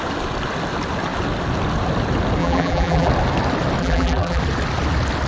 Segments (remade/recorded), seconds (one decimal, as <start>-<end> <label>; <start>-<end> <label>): 0.0-2.4 recorded; 2.4-3.1 remade; 3.1-3.8 recorded; 3.8-4.4 remade; 4.4-5.3 recorded